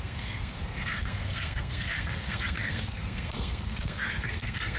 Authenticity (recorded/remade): remade